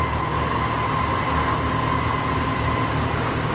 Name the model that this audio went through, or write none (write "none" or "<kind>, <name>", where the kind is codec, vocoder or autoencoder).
none